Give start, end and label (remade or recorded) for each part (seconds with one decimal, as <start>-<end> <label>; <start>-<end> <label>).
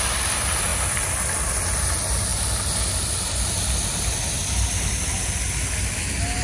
0.0-6.4 recorded